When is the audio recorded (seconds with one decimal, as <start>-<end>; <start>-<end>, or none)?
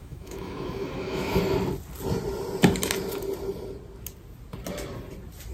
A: 1.4-5.5